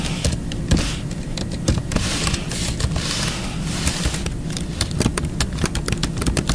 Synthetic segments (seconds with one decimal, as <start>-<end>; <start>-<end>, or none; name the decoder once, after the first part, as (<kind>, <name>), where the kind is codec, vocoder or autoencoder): none